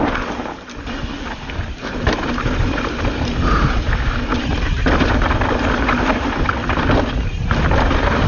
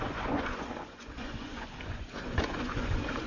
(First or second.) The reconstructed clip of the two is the second